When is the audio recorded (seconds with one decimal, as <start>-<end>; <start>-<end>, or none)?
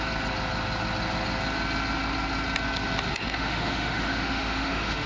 0.0-3.1